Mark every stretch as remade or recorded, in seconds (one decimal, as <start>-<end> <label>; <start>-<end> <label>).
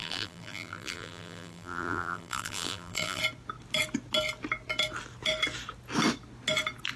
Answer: 0.0-3.2 remade; 3.2-7.0 recorded